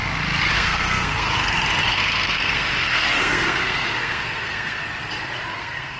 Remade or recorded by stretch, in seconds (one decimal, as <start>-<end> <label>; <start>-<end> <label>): 0.0-0.5 recorded; 0.5-1.3 remade; 1.3-1.9 recorded; 1.9-4.8 remade; 4.8-5.5 recorded; 5.5-6.0 remade